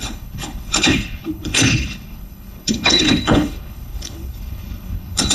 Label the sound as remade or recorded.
remade